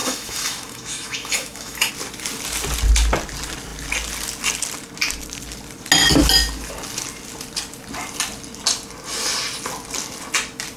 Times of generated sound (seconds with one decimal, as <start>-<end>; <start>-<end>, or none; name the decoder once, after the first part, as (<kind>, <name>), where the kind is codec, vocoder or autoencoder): 0.0-1.9 (autoencoder, DAC-VAE)